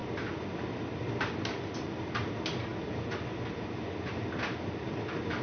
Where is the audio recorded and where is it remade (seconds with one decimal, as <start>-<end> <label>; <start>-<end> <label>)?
0.0-5.4 recorded